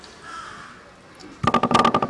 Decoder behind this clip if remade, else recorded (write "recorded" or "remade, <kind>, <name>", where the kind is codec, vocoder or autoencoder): recorded